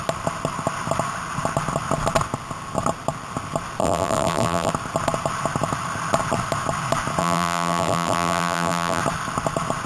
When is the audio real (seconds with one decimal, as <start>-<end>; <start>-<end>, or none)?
0.0-3.8; 4.7-7.2; 9.0-9.9